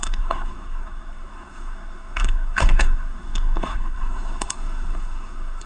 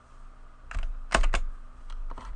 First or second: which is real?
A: second